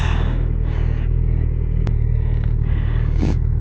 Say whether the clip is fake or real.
fake